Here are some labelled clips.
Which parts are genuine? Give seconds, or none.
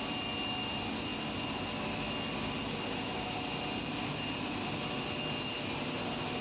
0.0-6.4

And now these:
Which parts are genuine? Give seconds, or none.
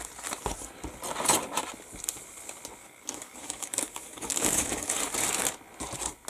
0.0-2.8; 5.0-6.3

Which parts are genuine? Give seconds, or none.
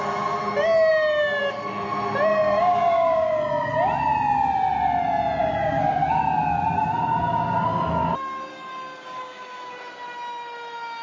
0.0-2.3; 3.4-5.4; 6.2-8.5; 9.9-11.0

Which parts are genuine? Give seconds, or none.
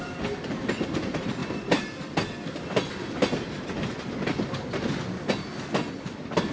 0.0-6.5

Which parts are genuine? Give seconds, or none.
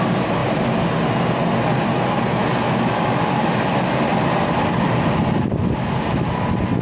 0.0-4.1; 4.7-6.8